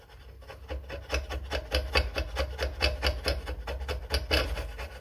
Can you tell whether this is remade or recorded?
recorded